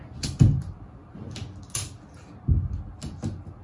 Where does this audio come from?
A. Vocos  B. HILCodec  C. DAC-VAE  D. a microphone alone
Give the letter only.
D